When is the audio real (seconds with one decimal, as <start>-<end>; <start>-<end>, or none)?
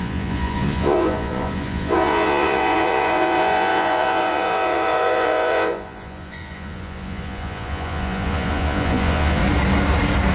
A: 9.4-10.3